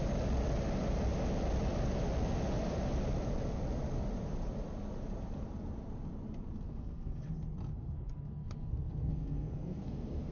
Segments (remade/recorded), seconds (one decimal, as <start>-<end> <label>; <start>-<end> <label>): 0.0-6.7 recorded; 6.7-7.3 remade; 7.3-7.7 recorded; 7.7-10.3 remade